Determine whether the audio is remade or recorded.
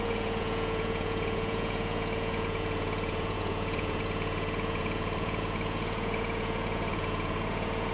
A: remade